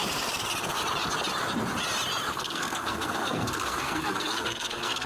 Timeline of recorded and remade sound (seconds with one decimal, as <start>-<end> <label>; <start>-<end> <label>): 0.0-2.3 recorded; 2.3-5.1 remade